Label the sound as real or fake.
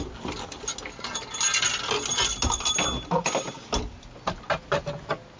real